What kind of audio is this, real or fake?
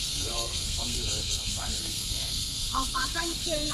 fake